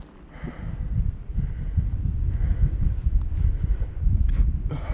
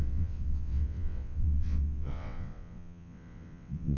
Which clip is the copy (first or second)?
second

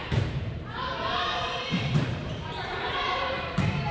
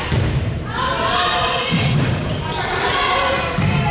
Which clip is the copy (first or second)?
first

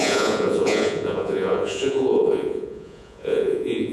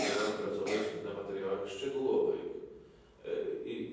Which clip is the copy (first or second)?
first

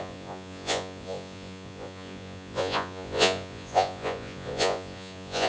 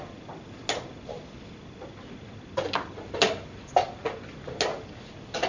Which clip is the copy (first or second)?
first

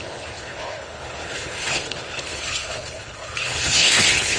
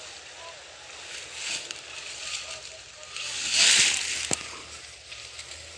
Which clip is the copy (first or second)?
first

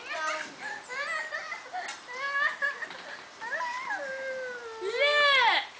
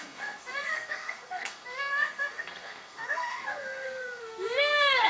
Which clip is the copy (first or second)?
second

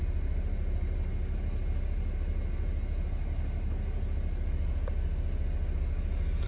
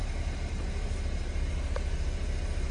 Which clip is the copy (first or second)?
second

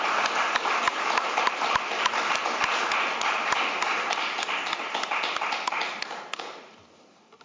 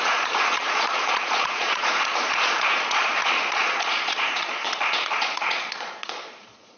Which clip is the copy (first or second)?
second